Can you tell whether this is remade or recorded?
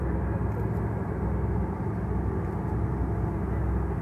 recorded